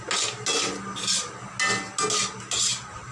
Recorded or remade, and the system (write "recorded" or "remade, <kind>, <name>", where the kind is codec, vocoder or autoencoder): recorded